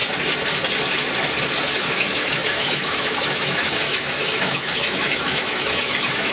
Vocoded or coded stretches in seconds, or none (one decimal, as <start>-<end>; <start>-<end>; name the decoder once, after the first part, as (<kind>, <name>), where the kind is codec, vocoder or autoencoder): 1.8-6.3 (autoencoder, DAC-VAE)